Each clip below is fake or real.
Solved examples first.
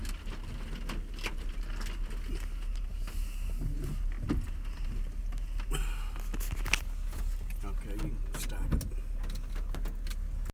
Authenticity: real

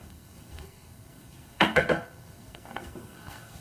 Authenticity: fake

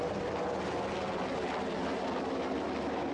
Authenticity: real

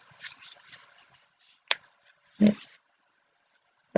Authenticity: real